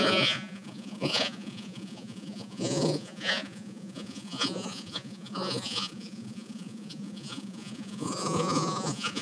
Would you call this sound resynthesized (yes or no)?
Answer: yes